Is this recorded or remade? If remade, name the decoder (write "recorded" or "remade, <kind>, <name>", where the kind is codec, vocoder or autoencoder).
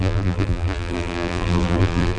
remade, vocoder, BigVGAN v2